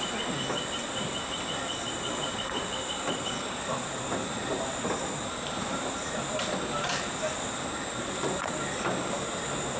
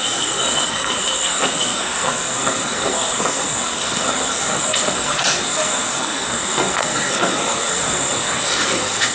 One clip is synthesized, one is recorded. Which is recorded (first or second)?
first